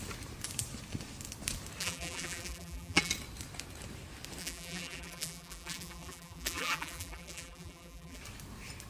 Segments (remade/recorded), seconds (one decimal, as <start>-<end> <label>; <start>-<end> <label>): 0.0-1.8 recorded; 1.8-3.1 remade; 3.1-4.4 recorded; 4.4-8.2 remade; 8.2-8.9 recorded